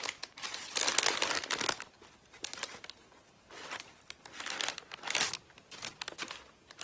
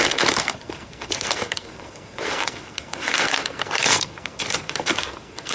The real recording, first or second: first